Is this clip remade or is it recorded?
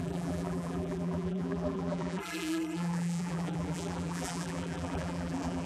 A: remade